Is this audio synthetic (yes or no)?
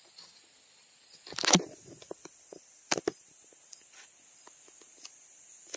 no